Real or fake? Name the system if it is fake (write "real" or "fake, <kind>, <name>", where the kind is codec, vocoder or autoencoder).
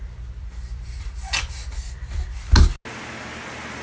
real